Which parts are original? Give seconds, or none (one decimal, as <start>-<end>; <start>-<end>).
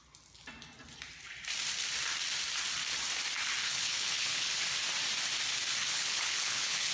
0.0-3.6; 4.6-5.8